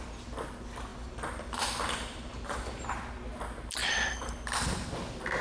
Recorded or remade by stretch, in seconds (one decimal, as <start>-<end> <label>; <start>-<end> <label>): 0.0-0.9 recorded; 0.9-2.9 remade; 2.9-3.8 recorded; 3.8-4.3 remade; 4.3-5.4 recorded